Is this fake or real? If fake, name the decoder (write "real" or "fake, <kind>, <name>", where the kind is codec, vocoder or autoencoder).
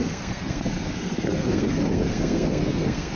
fake, codec, SNAC